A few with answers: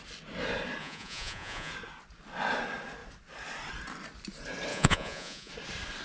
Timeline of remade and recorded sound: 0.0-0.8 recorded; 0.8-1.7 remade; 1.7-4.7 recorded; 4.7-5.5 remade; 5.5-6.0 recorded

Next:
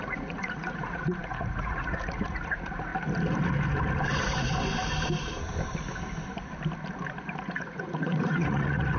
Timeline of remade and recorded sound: 0.0-2.9 remade; 2.9-7.4 recorded; 7.4-9.0 remade